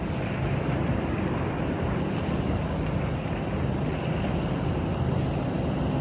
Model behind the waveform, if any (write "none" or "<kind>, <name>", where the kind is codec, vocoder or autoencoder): none